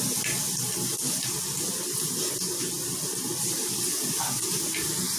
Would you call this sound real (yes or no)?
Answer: yes